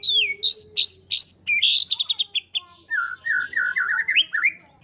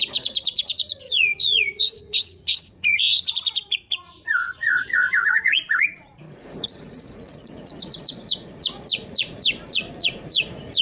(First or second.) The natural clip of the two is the first